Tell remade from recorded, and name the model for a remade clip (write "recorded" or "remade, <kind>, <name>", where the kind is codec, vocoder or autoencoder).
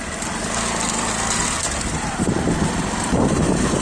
recorded